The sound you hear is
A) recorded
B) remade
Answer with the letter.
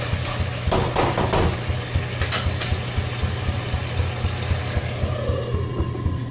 A